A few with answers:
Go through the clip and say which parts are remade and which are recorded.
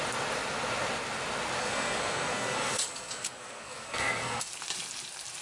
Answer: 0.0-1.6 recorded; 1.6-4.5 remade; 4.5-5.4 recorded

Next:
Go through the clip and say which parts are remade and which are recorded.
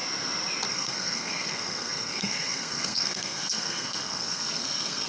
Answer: 0.0-0.7 recorded; 0.7-5.1 remade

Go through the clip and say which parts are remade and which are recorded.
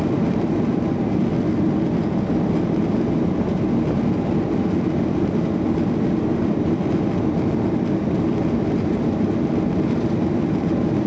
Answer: 0.0-11.1 recorded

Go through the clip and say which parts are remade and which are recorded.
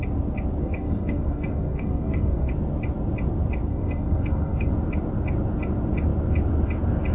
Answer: 0.0-0.6 recorded; 0.6-2.5 remade; 2.5-3.7 recorded; 3.7-4.7 remade; 4.7-7.1 recorded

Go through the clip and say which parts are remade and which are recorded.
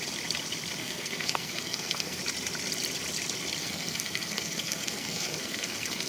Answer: 0.0-0.8 recorded; 0.8-2.2 remade; 2.2-3.6 recorded; 3.6-6.1 remade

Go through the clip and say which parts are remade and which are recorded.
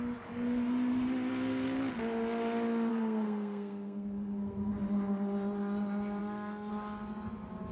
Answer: 0.0-2.9 recorded; 2.9-4.7 remade; 4.7-6.2 recorded; 6.2-6.7 remade; 6.7-7.7 recorded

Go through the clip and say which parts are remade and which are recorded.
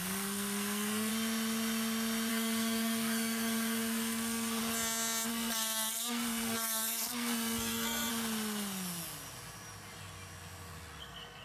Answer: 0.0-1.1 remade; 1.1-2.3 recorded; 2.3-4.6 remade; 4.6-5.3 recorded; 5.3-8.1 remade; 8.1-11.0 recorded; 11.0-11.4 remade